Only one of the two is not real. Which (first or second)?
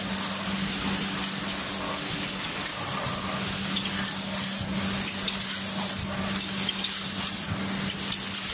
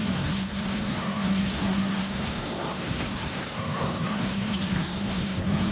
second